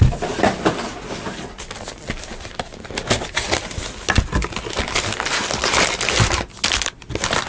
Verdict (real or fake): real